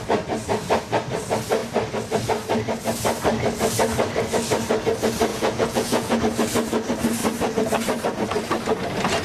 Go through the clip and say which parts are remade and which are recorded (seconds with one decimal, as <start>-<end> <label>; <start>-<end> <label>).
0.0-5.3 recorded; 5.3-6.2 remade; 6.2-9.2 recorded